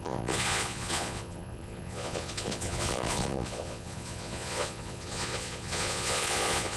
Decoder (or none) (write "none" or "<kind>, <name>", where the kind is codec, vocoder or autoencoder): vocoder, Vocos